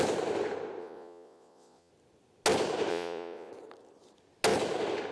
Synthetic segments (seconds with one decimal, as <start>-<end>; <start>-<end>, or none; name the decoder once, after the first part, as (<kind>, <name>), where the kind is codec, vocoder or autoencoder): 0.8-1.9 (vocoder, Vocos); 2.9-3.5